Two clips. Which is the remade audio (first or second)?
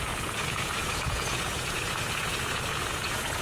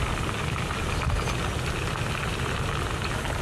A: first